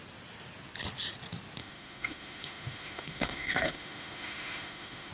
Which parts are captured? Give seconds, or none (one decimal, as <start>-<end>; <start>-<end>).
0.0-1.6

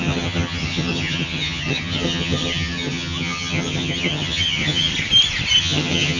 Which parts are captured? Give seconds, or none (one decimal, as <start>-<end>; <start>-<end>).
4.9-5.6

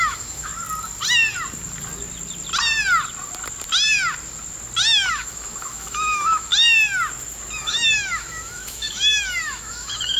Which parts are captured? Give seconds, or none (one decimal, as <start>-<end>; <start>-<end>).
0.5-5.1; 6.5-7.6

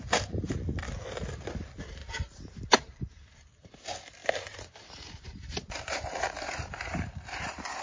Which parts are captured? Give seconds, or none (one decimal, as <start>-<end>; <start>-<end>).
0.0-2.0; 3.8-4.2

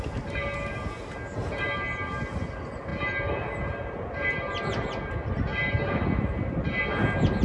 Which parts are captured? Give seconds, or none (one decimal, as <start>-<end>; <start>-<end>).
0.0-7.4